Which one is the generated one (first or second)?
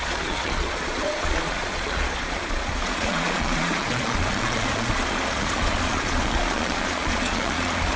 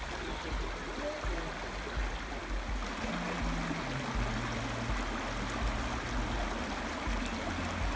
first